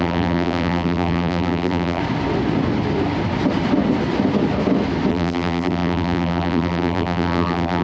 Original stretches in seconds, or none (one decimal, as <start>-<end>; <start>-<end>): 2.0-5.1